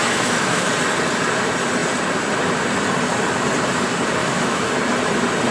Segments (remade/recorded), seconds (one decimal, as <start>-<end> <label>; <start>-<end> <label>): 0.0-0.7 remade; 0.7-4.2 recorded; 4.2-4.7 remade; 4.7-5.5 recorded